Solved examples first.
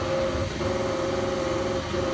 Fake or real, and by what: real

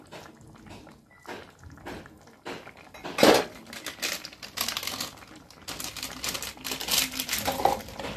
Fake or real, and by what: real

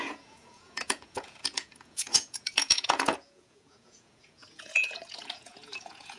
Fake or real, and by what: fake, vocoder, Vocos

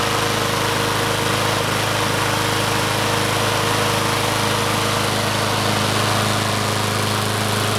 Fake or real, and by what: real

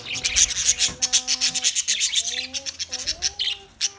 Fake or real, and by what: real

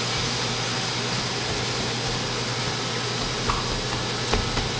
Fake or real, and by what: real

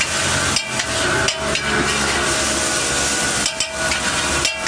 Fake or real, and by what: real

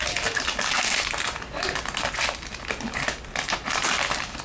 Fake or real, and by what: real